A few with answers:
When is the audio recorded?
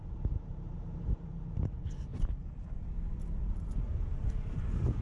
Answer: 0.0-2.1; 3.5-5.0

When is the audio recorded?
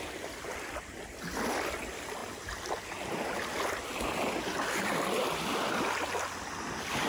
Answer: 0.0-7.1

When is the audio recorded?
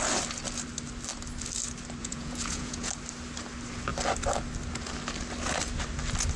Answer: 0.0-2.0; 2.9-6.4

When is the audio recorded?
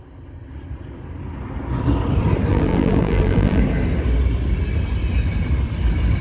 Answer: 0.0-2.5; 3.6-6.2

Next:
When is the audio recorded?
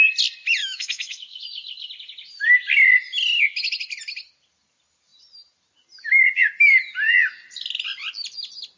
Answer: 0.0-0.6; 1.4-8.8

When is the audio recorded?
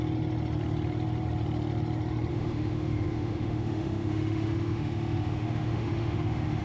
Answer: 0.0-2.3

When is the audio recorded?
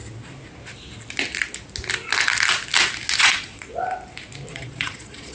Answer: 0.0-3.2; 3.7-4.5